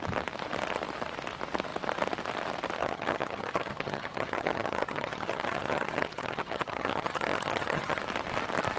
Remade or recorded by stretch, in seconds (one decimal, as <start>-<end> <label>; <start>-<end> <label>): 0.0-2.8 recorded; 2.8-8.0 remade; 8.0-8.8 recorded

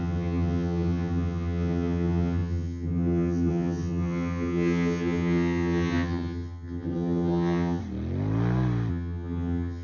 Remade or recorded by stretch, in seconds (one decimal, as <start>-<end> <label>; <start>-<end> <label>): 0.0-7.8 remade; 7.8-8.9 recorded; 8.9-9.8 remade